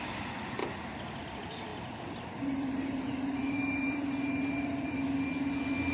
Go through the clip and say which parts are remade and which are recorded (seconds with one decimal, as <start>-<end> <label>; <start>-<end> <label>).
0.0-1.7 recorded; 1.7-5.2 remade; 5.2-5.9 recorded